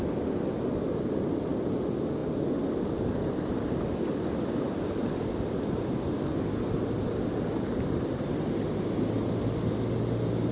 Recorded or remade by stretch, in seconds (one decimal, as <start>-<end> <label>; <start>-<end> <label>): 0.0-10.5 recorded